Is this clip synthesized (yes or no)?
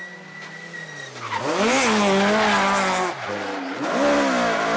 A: no